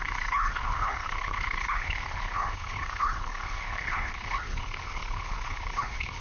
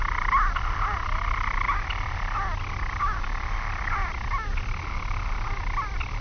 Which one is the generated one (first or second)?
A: first